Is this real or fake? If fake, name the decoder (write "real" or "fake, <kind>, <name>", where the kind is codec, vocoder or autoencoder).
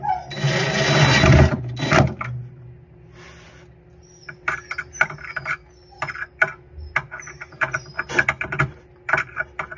real